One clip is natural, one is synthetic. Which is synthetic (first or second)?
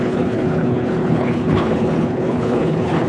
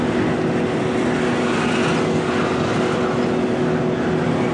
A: first